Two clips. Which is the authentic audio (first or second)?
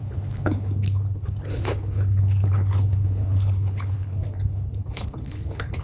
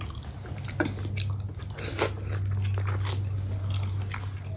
second